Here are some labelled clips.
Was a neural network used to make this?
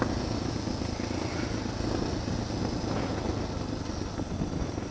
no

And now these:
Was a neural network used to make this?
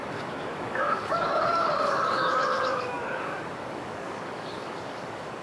yes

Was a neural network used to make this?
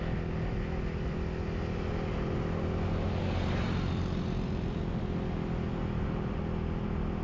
no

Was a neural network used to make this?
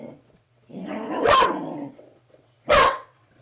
yes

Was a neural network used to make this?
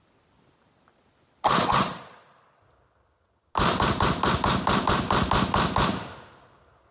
no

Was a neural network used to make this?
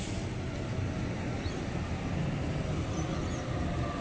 no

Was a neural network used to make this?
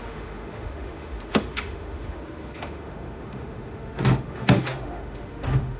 yes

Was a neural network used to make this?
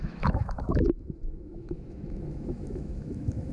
yes